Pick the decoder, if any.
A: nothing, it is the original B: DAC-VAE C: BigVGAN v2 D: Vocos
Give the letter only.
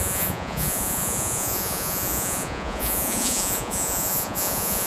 D